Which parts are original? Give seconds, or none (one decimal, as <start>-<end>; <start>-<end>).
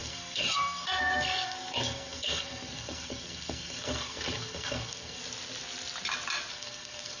5.2-6.5